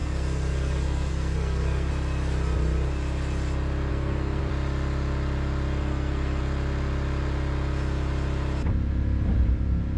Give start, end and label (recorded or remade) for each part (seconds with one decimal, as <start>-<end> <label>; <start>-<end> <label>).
0.0-1.9 remade; 1.9-3.9 recorded; 3.9-4.4 remade; 4.4-5.8 recorded; 5.8-6.4 remade; 6.4-10.0 recorded